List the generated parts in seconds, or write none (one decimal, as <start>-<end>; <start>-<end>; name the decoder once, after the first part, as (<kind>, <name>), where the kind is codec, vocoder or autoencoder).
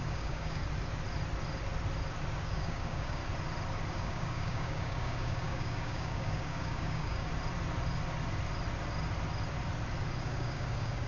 0.0-0.6 (codec, DAC); 2.4-3.2; 3.9-7.3; 10.2-11.1